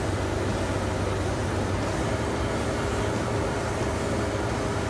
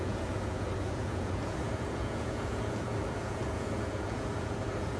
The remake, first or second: second